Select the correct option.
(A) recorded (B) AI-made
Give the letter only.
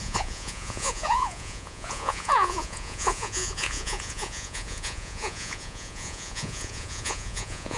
B